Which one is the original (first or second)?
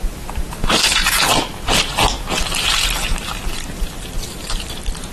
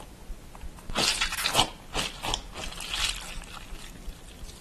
second